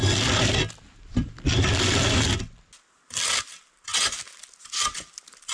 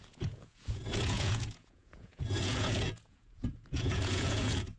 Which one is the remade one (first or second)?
second